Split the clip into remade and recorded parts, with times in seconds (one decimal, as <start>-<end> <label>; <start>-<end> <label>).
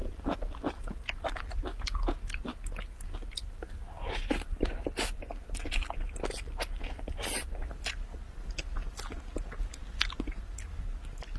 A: 0.0-11.4 recorded